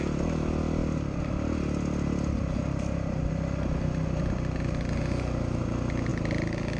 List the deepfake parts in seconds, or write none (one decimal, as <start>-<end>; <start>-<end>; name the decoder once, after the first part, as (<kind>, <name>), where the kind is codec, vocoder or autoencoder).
none